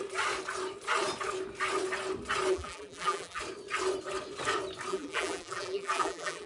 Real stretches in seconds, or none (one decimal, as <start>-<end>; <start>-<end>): 0.0-2.5; 3.4-4.9